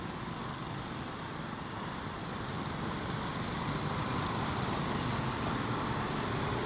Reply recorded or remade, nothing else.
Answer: recorded